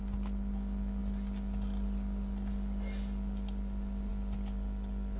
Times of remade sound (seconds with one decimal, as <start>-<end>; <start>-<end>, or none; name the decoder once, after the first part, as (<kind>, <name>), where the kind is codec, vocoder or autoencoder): none